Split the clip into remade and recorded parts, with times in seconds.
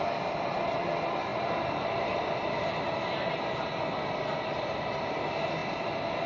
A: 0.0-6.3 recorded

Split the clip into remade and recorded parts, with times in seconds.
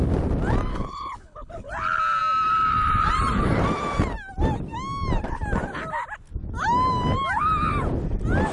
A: 0.0-0.7 recorded; 0.7-1.7 remade; 1.7-8.5 recorded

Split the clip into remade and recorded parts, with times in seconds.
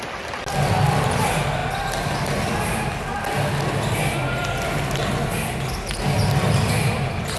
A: 0.0-7.4 recorded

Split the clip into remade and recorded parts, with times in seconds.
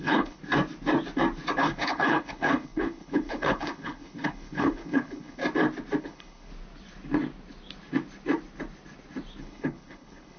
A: 0.0-0.4 remade; 0.4-1.6 recorded; 1.6-5.4 remade; 5.4-6.0 recorded; 6.0-6.5 remade; 6.5-9.4 recorded; 9.4-10.4 remade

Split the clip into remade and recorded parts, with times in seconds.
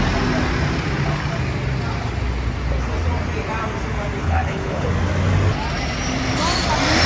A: 0.0-4.2 recorded; 4.2-4.9 remade; 4.9-7.1 recorded